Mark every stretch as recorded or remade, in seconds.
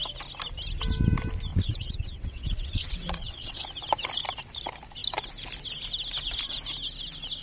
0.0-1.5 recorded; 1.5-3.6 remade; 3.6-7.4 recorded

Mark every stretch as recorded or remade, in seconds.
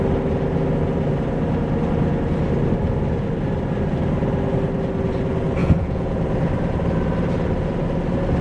0.0-5.6 recorded; 5.6-6.2 remade; 6.2-8.4 recorded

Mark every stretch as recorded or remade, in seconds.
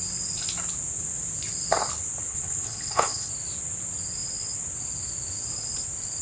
0.0-2.3 recorded; 2.3-3.3 remade; 3.3-6.2 recorded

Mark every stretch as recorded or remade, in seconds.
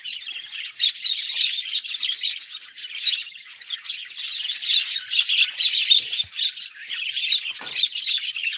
0.0-8.6 recorded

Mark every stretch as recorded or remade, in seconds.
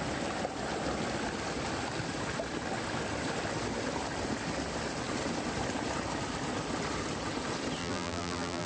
0.0-7.8 recorded; 7.8-8.7 remade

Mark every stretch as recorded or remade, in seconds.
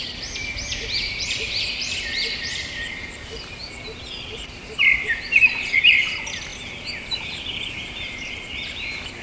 0.0-3.6 remade; 3.6-4.3 recorded; 4.3-9.2 remade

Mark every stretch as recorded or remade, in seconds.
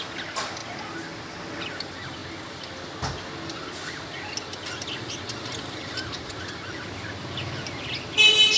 0.0-8.6 recorded